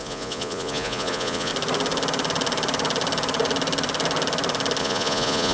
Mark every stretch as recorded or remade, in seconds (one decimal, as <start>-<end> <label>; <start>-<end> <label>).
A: 0.0-1.5 remade; 1.5-4.8 recorded; 4.8-5.5 remade